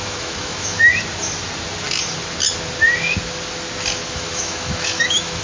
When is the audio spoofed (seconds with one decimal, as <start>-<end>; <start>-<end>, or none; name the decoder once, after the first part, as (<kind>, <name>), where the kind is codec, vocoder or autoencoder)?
0.0-0.9 (autoencoder, DAC-VAE); 4.1-5.4